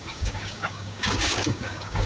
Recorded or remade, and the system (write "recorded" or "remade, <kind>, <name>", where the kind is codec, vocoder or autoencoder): remade, codec, DAC